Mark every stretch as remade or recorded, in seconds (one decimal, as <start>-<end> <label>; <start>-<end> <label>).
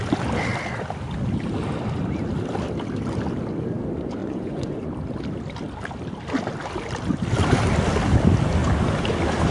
0.0-4.2 recorded; 4.2-4.9 remade; 4.9-9.5 recorded